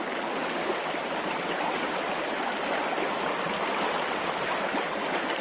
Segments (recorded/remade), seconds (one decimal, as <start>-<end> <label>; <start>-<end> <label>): 0.0-0.4 recorded; 0.4-3.6 remade; 3.6-5.4 recorded